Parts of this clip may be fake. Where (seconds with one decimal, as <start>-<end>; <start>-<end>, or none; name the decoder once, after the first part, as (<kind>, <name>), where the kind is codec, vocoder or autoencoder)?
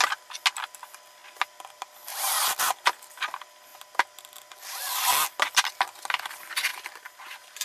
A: 6.7-7.6 (vocoder, BigVGAN v2)